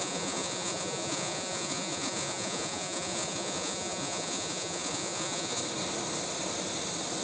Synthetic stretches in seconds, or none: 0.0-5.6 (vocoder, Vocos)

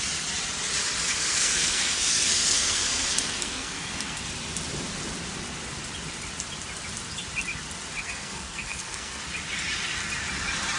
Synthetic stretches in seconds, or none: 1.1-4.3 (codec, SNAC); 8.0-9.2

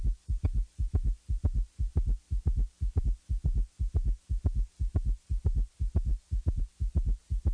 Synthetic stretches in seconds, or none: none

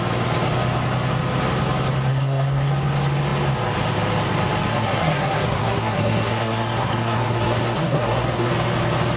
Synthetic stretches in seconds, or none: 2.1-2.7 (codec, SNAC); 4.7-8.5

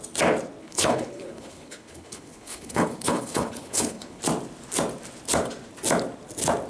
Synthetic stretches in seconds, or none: 0.6-4.2 (codec, HILCodec)

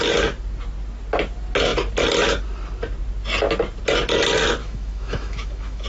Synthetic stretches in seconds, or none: 4.6-5.9 (autoencoder, DAC-VAE)